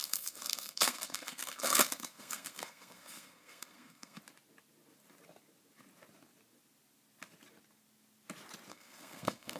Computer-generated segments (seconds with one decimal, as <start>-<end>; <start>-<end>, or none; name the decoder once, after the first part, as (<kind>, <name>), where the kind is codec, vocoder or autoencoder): 0.0-4.2 (codec, SNAC); 8.7-9.6

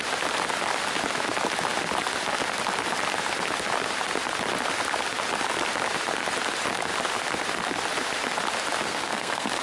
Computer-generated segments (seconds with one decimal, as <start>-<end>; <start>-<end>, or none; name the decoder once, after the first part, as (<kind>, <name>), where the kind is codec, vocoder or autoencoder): 8.8-9.6 (codec, SNAC)

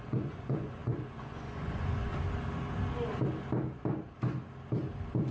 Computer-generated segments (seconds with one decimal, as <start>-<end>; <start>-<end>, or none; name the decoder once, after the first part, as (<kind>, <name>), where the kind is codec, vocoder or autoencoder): 0.0-2.1 (vocoder, Vocos)

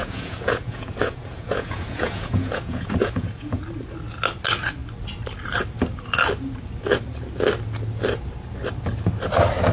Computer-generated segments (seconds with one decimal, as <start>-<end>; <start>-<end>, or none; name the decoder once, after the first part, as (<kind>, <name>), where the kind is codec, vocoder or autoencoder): 0.0-3.6 (vocoder, Vocos)

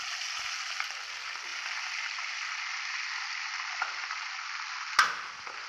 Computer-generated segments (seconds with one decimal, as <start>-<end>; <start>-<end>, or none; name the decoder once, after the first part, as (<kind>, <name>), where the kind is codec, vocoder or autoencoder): none

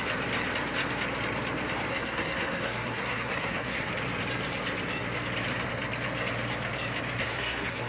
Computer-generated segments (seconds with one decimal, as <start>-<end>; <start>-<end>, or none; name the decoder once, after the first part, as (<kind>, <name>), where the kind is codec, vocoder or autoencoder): 1.9-3.9 (codec, SNAC); 7.2-7.9

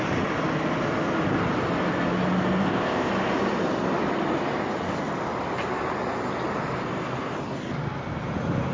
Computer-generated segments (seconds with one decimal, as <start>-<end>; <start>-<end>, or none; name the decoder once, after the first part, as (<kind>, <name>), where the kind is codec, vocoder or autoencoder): 2.6-3.1 (codec, ZipCodec)